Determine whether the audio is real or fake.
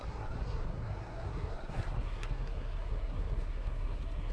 fake